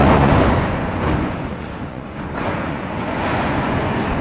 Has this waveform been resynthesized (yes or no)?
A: yes